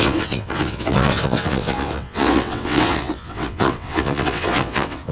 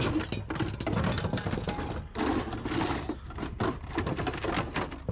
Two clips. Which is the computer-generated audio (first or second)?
first